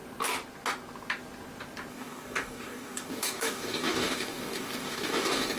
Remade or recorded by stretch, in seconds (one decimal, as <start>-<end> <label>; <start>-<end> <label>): 0.0-1.9 recorded; 1.9-5.6 remade